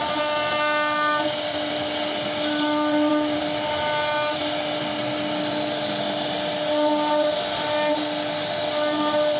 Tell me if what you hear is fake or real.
real